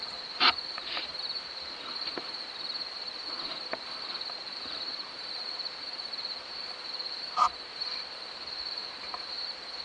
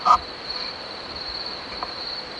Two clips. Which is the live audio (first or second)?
second